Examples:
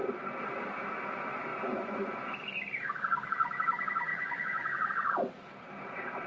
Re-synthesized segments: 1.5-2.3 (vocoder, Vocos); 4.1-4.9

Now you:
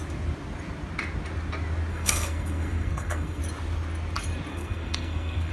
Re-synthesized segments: 1.9-3.4 (codec, SNAC); 4.5-5.5

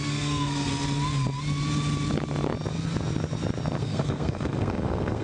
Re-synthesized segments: 0.0-0.7 (codec, SNAC); 3.8-5.2